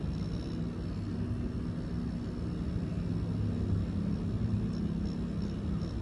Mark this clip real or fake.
real